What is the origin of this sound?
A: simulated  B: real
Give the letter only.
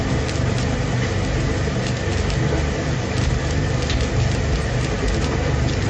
B